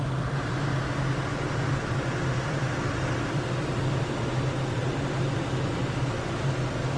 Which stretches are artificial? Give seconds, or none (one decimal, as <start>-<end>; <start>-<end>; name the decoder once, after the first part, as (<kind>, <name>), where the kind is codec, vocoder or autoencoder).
1.3-3.9 (vocoder, BigVGAN v2); 4.8-5.4